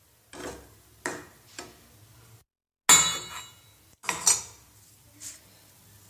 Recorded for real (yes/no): yes